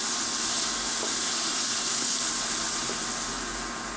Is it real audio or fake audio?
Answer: real